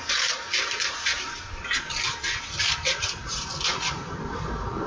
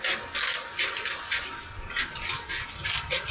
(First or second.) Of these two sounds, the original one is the second